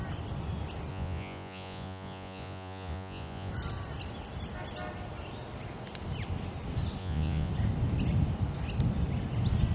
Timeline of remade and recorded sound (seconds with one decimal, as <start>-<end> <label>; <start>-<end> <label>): 0.0-0.9 recorded; 0.9-3.5 remade; 3.5-7.0 recorded; 7.0-7.5 remade; 7.5-9.7 recorded